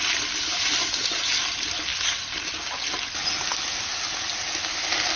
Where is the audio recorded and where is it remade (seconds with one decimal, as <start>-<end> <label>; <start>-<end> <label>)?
0.0-5.2 recorded